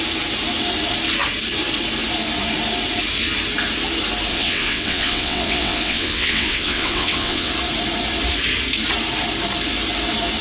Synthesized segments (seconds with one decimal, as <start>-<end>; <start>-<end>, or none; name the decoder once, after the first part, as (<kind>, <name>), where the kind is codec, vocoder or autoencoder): 4.3-7.5 (vocoder, WaveNeXt)